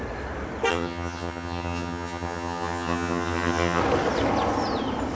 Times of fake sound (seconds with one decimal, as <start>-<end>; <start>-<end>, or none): 0.7-3.8